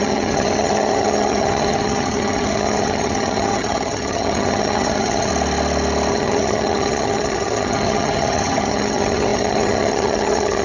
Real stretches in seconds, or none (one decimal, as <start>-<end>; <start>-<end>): 5.3-6.1